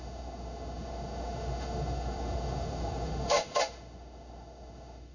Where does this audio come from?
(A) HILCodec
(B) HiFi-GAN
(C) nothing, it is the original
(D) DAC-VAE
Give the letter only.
D